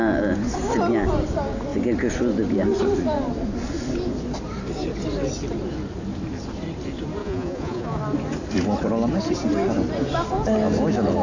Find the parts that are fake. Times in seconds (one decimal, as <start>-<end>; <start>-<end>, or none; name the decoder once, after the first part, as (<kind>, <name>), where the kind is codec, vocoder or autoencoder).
7.2-8.0 (vocoder, Vocos)